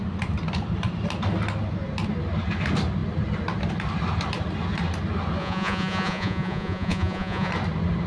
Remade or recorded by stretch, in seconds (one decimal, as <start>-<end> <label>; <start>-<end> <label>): 0.0-5.4 recorded; 5.4-7.5 remade; 7.5-8.1 recorded